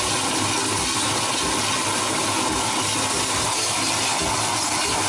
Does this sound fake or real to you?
real